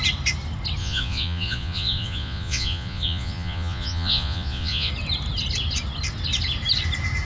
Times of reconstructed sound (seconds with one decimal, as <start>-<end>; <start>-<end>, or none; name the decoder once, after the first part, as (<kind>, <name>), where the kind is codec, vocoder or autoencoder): 0.8-4.9 (vocoder, Vocos)